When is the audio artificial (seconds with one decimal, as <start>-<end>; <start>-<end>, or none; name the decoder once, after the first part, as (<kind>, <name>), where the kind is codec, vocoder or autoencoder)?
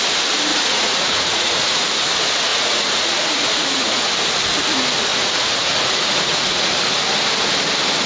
0.5-2.1 (vocoder, Vocos); 2.5-4.1; 5.1-6.7